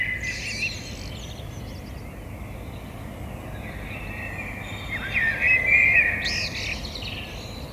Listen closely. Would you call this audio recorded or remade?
recorded